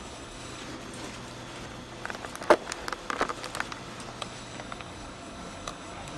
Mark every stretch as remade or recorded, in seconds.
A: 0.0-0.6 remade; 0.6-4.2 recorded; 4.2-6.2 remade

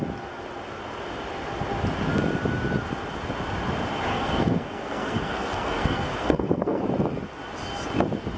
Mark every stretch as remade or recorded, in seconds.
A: 0.0-4.1 recorded; 4.1-6.8 remade; 6.8-8.4 recorded

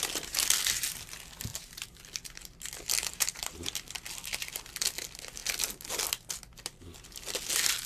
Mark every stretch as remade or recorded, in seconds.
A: 0.0-1.5 recorded; 1.5-2.0 remade; 2.0-3.1 recorded; 3.1-3.7 remade; 3.7-7.9 recorded

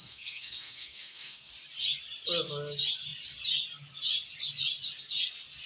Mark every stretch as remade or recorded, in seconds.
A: 0.0-1.5 remade; 1.5-5.7 recorded

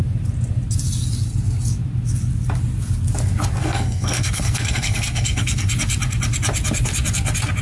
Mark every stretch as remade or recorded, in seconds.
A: 0.0-3.6 recorded; 3.6-5.7 remade; 5.7-7.6 recorded

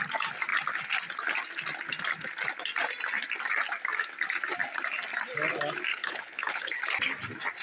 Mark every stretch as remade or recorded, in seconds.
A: 0.0-5.9 recorded; 5.9-6.8 remade; 6.8-7.6 recorded